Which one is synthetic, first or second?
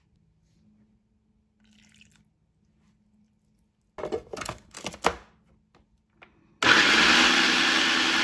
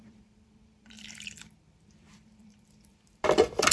second